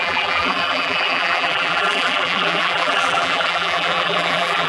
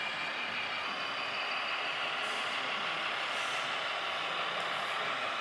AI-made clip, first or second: first